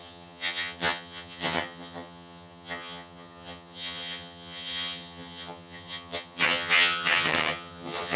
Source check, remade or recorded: remade